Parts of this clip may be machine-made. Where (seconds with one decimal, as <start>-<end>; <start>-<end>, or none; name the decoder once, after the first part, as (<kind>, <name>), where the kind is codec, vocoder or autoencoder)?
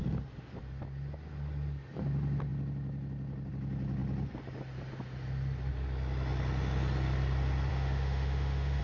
7.7-8.8 (autoencoder, DAC-VAE)